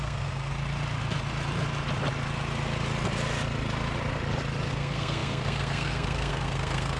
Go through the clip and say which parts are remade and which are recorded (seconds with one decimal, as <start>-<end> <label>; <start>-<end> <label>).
0.0-0.5 remade; 0.5-4.7 recorded; 4.7-7.0 remade

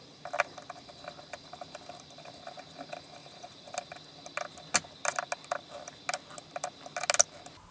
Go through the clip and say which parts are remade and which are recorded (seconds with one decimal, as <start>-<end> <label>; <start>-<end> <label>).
0.0-3.2 recorded; 3.2-3.7 remade; 3.7-7.7 recorded